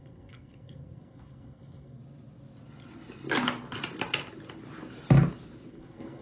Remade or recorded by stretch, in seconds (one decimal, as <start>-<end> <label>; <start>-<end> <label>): 0.0-2.0 remade; 2.0-5.7 recorded; 5.7-6.2 remade